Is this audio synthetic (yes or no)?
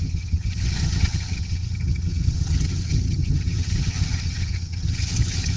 yes